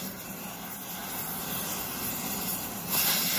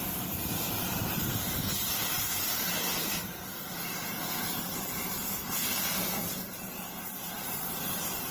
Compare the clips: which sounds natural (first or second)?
first